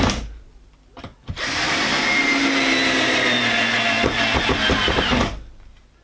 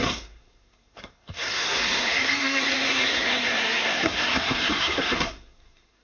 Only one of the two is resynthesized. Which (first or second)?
second